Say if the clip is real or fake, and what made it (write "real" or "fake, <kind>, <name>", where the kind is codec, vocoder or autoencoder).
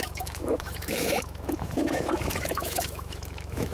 fake, autoencoder, DAC-VAE